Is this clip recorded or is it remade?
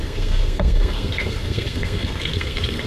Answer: remade